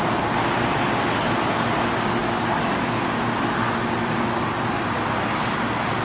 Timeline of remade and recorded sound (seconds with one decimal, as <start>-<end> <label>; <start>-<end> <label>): 0.0-6.0 recorded